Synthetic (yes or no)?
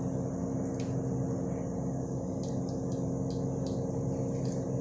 no